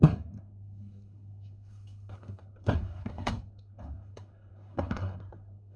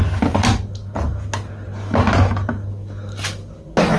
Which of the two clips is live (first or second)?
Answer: second